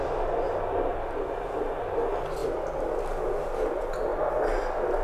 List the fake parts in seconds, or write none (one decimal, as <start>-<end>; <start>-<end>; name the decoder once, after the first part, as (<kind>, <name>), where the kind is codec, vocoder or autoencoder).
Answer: 0.9-1.6 (vocoder, BigVGAN v2)